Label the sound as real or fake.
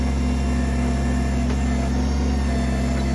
real